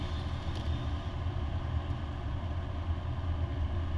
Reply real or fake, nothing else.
real